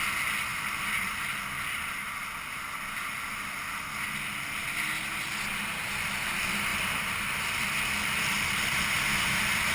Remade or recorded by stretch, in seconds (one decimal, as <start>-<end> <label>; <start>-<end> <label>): 0.0-0.5 recorded; 0.5-1.2 remade; 1.2-6.7 recorded; 6.7-8.8 remade; 8.8-9.7 recorded

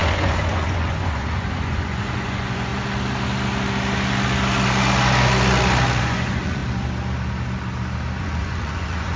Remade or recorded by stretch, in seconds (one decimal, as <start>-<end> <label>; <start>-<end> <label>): 0.0-2.7 remade; 2.7-6.0 recorded; 6.0-6.6 remade; 6.6-8.2 recorded; 8.2-9.2 remade

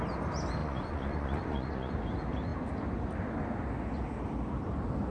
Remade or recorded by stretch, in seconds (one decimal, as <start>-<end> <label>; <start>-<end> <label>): 0.0-0.6 recorded; 0.6-1.9 remade; 1.9-5.1 recorded

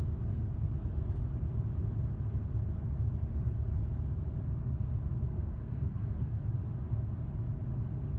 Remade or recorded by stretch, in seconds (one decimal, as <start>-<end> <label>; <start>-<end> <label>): 0.0-1.2 remade; 1.2-5.3 recorded; 5.3-6.4 remade; 6.4-8.2 recorded